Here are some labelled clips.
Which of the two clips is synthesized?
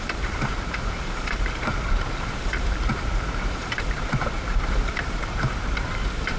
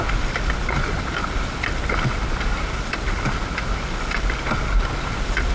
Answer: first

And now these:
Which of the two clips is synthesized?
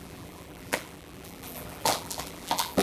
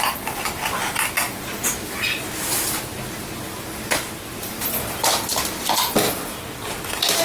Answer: first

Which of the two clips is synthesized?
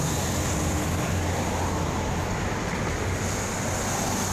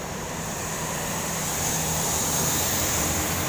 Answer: second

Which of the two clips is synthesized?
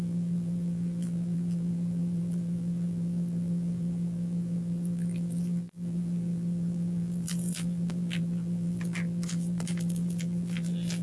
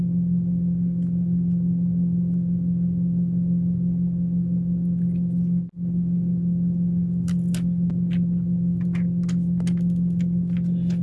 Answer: first